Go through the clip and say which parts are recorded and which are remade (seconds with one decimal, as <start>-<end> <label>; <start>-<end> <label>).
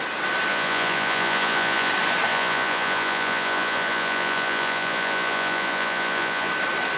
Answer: 0.0-0.5 recorded; 0.5-1.9 remade; 1.9-2.3 recorded; 2.3-6.5 remade; 6.5-7.0 recorded